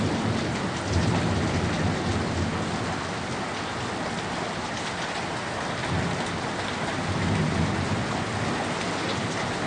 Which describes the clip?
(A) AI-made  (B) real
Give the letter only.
B